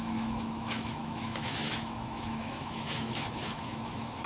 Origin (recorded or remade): remade